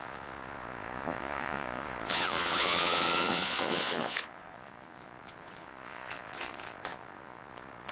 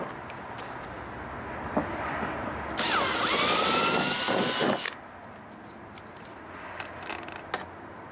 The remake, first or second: first